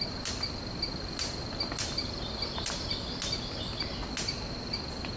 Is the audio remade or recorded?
recorded